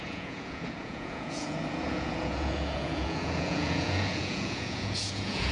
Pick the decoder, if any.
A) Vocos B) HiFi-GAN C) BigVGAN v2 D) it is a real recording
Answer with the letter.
A